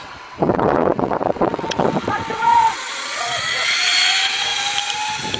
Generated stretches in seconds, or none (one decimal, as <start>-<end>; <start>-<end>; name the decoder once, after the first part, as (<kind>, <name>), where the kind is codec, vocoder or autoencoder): 0.0-4.5 (vocoder, WaveNeXt)